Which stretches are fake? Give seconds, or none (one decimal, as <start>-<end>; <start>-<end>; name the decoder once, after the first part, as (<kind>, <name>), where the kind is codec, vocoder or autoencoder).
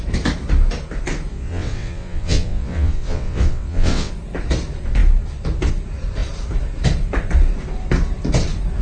1.3-4.1 (vocoder, WaveNeXt)